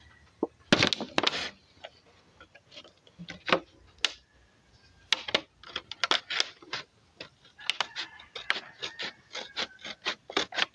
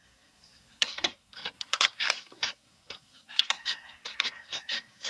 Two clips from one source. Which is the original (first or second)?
first